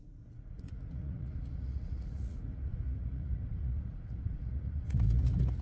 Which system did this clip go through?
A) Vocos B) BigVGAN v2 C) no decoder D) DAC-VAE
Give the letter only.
A